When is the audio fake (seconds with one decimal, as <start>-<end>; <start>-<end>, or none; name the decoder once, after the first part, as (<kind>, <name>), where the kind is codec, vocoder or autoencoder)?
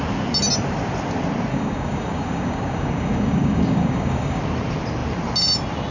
1.5-4.4 (codec, DAC)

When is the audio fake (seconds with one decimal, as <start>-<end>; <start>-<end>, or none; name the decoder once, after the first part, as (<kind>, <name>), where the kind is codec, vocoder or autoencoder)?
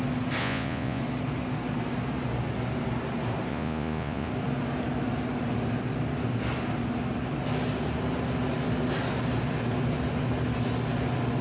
0.4-1.0 (vocoder, Vocos); 3.5-4.3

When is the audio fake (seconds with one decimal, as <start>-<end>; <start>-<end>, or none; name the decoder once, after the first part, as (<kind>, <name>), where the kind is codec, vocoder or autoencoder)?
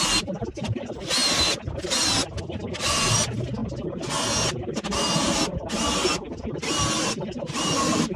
none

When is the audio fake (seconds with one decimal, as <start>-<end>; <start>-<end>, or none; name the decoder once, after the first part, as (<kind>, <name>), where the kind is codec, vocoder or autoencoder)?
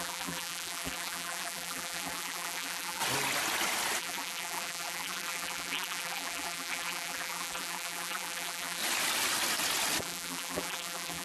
0.0-3.0 (vocoder, BigVGAN v2); 4.0-8.8; 10.0-11.2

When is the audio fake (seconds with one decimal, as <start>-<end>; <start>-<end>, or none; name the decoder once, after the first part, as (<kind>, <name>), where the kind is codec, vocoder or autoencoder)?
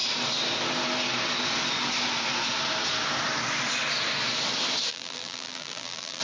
4.9-6.2 (vocoder, BigVGAN v2)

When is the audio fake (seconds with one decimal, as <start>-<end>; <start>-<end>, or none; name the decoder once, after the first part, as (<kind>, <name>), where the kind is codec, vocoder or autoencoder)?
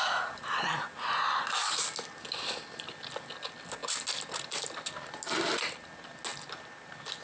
none